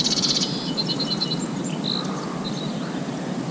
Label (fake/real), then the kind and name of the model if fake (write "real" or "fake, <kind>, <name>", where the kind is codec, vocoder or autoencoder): fake, vocoder, BigVGAN v2